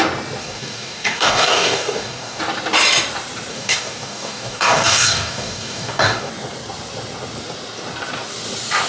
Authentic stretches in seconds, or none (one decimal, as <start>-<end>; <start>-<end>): 0.0-0.4; 2.4-3.5; 6.3-8.9